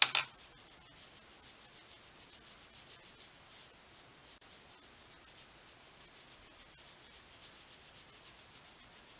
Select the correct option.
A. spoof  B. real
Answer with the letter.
B